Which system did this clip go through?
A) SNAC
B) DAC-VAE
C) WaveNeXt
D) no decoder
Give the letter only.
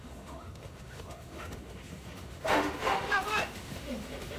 B